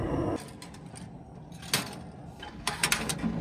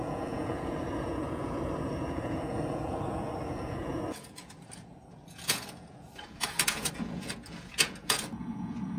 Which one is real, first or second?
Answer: first